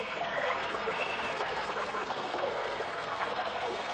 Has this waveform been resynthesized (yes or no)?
yes